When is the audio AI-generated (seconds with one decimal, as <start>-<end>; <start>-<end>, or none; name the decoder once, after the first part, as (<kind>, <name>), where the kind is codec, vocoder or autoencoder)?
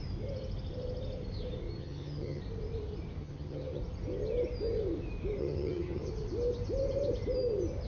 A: 1.8-2.4 (vocoder, HiFi-GAN); 3.2-3.8; 5.4-6.1